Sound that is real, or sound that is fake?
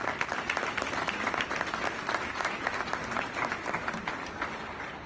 real